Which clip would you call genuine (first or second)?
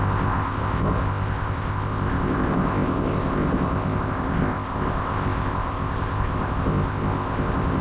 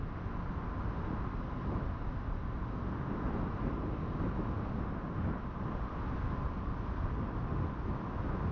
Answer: second